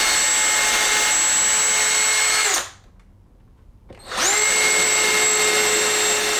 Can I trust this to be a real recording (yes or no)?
yes